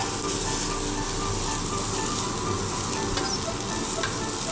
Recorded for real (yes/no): yes